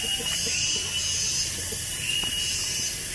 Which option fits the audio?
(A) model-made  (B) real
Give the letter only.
B